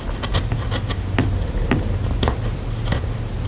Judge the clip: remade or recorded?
recorded